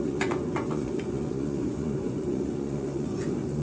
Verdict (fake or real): fake